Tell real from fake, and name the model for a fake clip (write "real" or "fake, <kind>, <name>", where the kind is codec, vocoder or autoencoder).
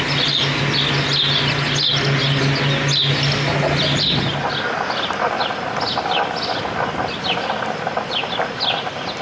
real